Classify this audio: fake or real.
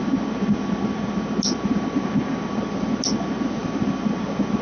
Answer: real